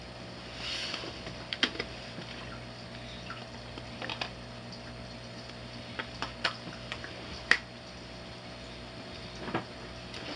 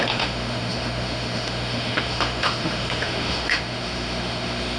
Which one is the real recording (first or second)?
first